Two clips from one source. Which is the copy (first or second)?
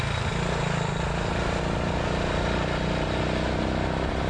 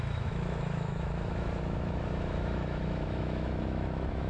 second